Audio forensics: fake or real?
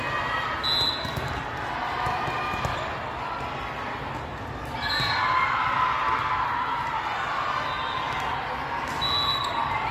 real